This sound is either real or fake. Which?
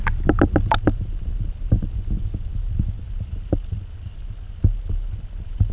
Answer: real